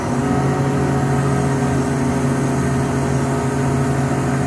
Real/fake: real